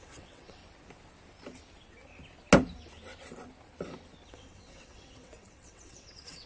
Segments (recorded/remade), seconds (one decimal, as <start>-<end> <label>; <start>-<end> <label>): 0.0-0.6 remade; 0.6-4.3 recorded; 4.3-6.5 remade